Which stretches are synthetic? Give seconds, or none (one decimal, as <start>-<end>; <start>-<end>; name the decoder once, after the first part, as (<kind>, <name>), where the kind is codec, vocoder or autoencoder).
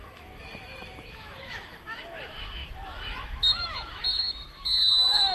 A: 0.0-5.3 (autoencoder, DAC-VAE)